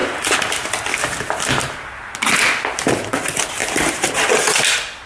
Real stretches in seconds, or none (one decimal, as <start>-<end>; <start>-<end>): 0.0-3.6; 4.1-5.1